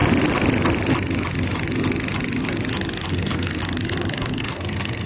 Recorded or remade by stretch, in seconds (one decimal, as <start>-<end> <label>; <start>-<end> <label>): 0.0-3.1 recorded; 3.1-3.6 remade; 3.6-4.4 recorded; 4.4-5.1 remade